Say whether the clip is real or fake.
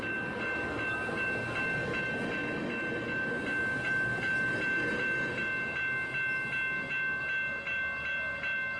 real